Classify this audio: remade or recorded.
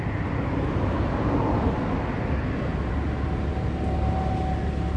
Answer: recorded